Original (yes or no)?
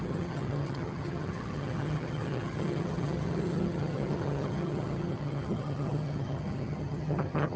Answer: no